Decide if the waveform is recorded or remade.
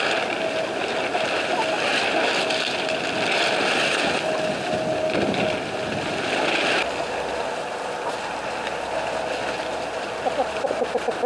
recorded